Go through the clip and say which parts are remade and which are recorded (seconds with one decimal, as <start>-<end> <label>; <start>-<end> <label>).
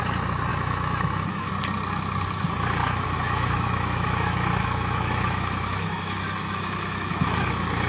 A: 0.0-0.5 recorded; 0.5-1.5 remade; 1.5-2.8 recorded; 2.8-7.5 remade; 7.5-7.9 recorded